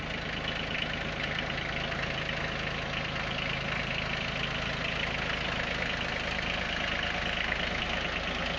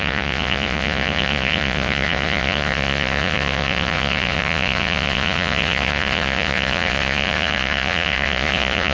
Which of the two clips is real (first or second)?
first